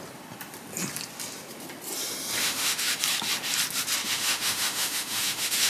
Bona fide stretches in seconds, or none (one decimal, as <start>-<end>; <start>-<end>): 0.0-2.4; 2.9-4.0